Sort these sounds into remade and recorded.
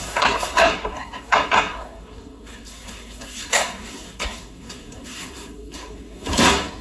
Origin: remade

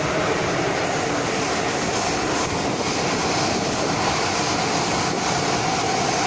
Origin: recorded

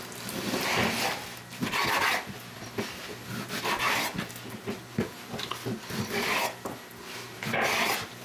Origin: recorded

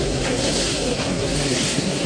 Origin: remade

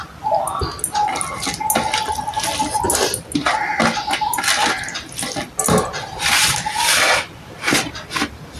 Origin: recorded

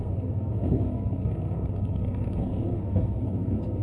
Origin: remade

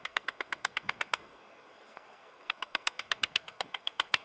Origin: remade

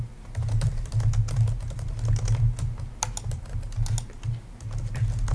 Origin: recorded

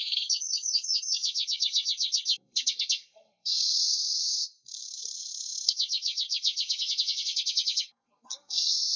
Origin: remade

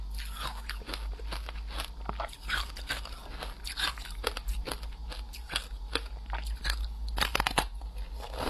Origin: recorded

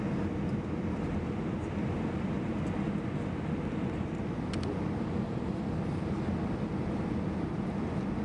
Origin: recorded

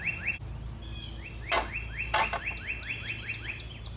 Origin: recorded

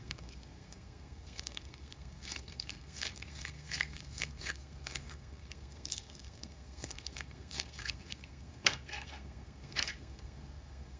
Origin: remade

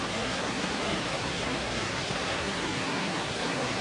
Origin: remade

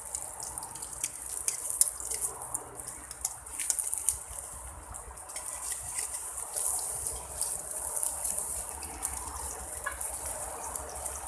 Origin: recorded